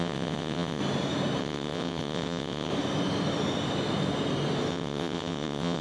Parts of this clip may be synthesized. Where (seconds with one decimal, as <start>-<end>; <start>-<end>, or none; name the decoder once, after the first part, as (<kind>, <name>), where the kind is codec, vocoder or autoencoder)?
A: 0.0-0.8 (vocoder, WaveNeXt); 1.4-2.7; 4.7-5.8